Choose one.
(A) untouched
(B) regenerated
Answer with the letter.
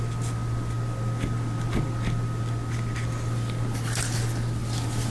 A